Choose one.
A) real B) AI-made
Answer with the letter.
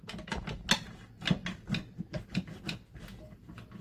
A